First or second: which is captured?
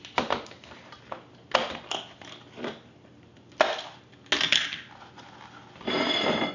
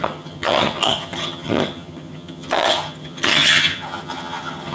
first